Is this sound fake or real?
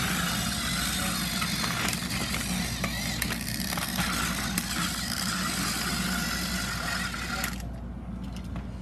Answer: real